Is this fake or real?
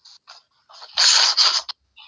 real